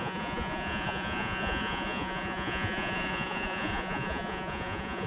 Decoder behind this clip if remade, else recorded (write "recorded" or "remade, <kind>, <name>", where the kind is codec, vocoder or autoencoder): remade, vocoder, Vocos